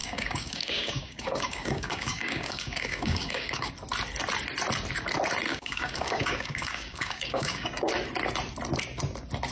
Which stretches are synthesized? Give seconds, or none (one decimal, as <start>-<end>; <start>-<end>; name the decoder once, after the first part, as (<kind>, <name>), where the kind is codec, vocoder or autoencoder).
0.0-3.7 (codec, DAC); 5.5-7.9